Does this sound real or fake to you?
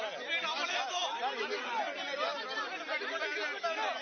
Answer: real